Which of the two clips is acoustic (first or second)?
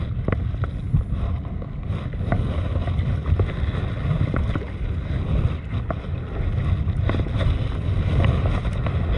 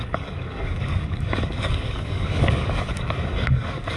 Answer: first